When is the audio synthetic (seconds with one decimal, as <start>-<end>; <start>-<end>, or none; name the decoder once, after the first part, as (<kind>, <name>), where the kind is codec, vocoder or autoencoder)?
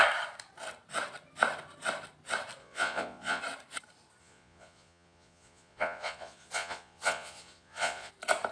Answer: 2.6-3.4 (vocoder, Vocos); 4.2-8.1